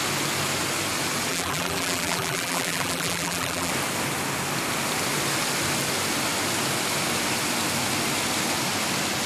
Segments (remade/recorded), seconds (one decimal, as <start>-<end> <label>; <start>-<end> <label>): 0.0-1.3 recorded; 1.3-3.7 remade; 3.7-9.3 recorded